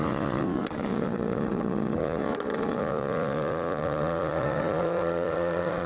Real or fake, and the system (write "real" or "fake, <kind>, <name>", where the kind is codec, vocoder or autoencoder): fake, vocoder, Vocos